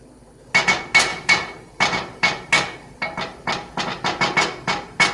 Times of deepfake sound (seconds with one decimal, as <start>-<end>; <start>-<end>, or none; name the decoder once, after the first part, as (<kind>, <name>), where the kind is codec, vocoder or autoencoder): 1.1-3.8 (vocoder, BigVGAN v2)

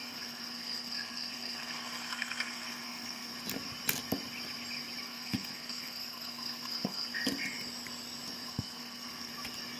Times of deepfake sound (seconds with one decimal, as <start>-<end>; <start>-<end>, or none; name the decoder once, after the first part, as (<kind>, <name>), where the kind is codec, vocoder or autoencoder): 0.0-3.3 (codec, SNAC); 5.0-7.1; 8.5-9.3

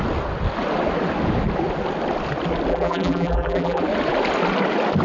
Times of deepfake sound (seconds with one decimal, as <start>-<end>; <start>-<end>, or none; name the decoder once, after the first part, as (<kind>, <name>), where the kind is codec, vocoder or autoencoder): 2.7-3.8 (vocoder, BigVGAN v2)

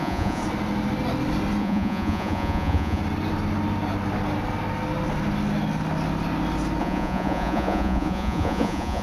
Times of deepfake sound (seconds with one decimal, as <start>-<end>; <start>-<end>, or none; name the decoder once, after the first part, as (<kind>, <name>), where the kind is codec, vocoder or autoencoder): 0.0-0.4 (vocoder, Vocos); 1.6-3.0; 6.8-9.0

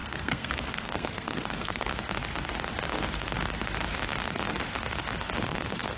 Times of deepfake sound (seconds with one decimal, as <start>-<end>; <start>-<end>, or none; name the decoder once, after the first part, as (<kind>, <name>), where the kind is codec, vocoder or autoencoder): 0.0-1.9 (codec, SNAC); 5.5-6.0

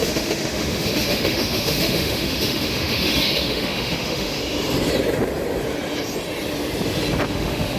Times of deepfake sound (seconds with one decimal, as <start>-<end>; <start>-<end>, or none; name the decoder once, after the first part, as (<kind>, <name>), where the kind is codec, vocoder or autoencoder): 0.0-4.4 (autoencoder, DAC-VAE); 7.3-7.8

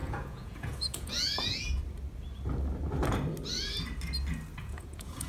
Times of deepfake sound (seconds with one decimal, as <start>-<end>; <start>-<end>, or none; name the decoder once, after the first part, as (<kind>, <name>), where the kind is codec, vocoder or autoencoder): 0.0-1.8 (vocoder, Vocos); 4.6-5.3

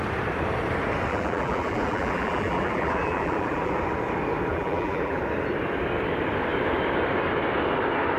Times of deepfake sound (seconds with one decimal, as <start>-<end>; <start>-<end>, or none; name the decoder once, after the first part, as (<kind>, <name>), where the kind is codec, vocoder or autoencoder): 1.1-3.8 (vocoder, BigVGAN v2); 4.5-5.2